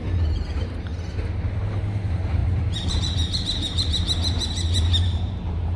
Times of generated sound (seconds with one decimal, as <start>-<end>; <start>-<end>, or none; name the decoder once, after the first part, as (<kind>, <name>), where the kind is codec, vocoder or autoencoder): 0.0-0.9 (vocoder, BigVGAN v2); 1.5-5.8